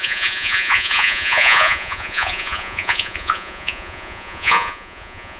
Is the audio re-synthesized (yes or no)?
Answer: yes